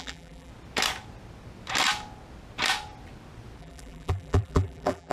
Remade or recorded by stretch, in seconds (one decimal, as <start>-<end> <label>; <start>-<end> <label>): 0.0-0.5 remade; 0.5-3.6 recorded; 3.6-5.1 remade